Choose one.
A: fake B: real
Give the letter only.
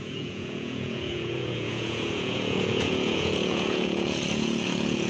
A